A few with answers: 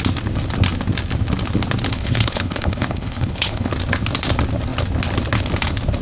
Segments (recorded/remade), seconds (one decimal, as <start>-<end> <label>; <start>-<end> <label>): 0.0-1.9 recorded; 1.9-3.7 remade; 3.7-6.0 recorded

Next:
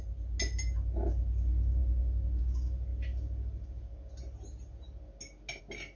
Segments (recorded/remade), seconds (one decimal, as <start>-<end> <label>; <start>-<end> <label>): 0.0-6.0 recorded

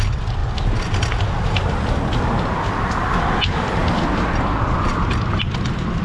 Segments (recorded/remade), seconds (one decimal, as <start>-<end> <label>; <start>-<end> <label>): 0.0-6.0 recorded

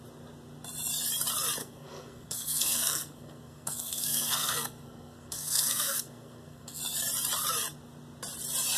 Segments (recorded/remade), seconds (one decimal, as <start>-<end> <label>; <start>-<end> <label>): 0.0-1.6 recorded; 1.6-6.8 remade; 6.8-8.8 recorded

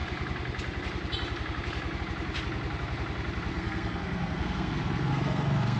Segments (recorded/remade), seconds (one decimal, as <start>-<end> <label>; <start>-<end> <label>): 0.0-3.5 recorded; 3.5-5.8 remade

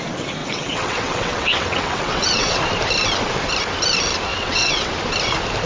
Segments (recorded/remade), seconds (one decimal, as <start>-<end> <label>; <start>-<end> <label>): 0.0-0.4 recorded; 0.4-2.6 remade; 2.6-4.3 recorded; 4.3-4.9 remade; 4.9-5.7 recorded